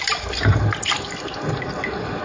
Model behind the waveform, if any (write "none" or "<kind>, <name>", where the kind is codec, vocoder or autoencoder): none